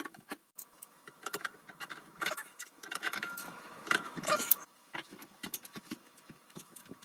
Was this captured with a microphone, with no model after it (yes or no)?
no